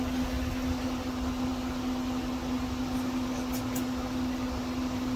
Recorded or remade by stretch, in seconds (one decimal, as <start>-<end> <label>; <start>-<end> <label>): 0.0-5.2 recorded